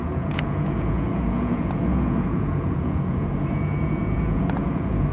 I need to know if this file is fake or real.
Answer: fake